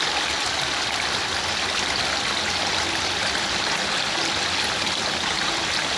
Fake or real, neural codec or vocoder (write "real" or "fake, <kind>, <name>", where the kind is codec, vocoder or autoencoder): real